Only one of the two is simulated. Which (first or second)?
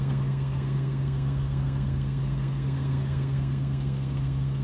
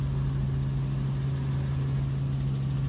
first